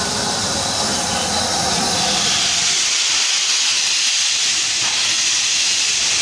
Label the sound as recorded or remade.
recorded